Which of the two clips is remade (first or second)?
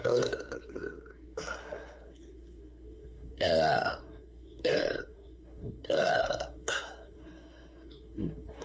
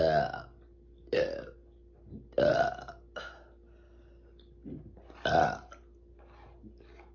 first